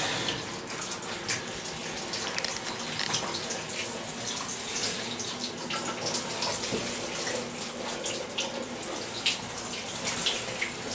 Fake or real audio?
real